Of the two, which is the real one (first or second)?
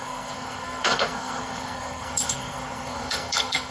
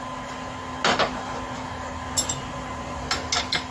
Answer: second